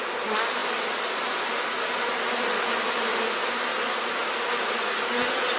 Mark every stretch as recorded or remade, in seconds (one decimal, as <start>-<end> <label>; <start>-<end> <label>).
0.0-0.6 recorded; 0.6-1.4 remade; 1.4-5.6 recorded